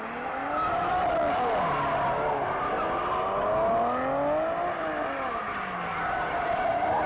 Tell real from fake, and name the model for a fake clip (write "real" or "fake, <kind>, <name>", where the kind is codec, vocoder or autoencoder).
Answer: real